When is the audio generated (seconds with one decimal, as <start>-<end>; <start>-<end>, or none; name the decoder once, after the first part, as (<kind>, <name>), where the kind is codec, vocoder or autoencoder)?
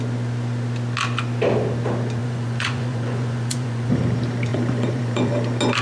2.2-3.9 (vocoder, Vocos); 4.5-5.3